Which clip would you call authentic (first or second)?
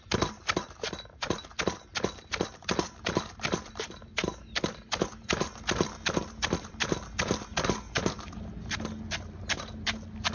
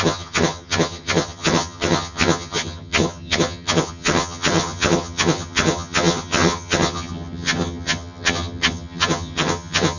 first